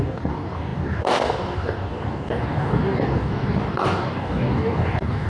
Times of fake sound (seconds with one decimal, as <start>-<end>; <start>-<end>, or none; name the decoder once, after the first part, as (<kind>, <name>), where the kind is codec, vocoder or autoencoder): 0.0-5.3 (codec, DAC)